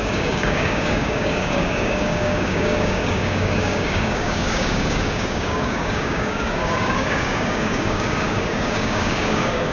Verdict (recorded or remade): remade